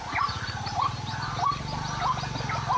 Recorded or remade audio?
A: recorded